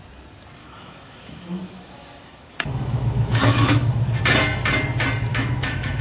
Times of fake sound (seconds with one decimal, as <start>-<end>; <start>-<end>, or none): 0.6-4.2; 5.3-6.0